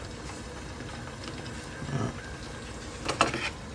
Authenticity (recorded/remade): recorded